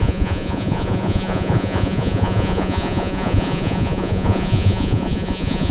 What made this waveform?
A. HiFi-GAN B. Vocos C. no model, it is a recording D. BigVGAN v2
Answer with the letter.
B